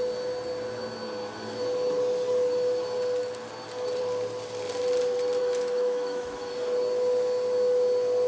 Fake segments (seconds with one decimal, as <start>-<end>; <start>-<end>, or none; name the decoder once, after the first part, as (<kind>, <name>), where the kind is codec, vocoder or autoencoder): 5.4-6.5 (autoencoder, DAC-VAE)